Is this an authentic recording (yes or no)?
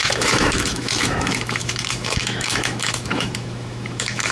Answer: no